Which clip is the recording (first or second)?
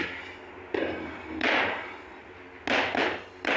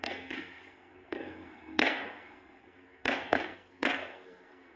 first